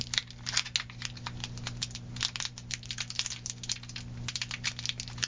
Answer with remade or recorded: recorded